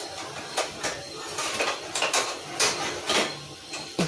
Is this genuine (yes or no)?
yes